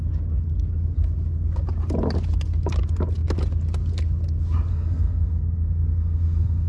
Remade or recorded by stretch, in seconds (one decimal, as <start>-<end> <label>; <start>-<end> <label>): 0.0-4.7 recorded; 4.7-6.7 remade